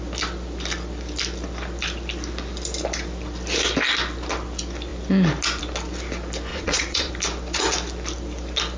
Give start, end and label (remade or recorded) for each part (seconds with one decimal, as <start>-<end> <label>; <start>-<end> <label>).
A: 0.0-6.5 recorded; 6.5-7.1 remade; 7.1-8.8 recorded

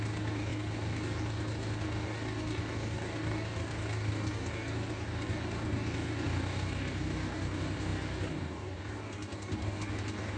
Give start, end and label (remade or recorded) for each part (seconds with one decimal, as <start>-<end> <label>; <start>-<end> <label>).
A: 0.0-10.4 remade